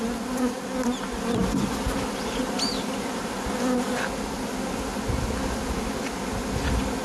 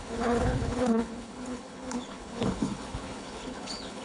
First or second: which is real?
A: first